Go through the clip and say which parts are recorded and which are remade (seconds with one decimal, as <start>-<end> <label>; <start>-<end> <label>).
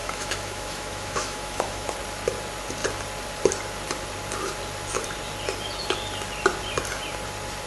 0.0-1.9 remade; 1.9-7.7 recorded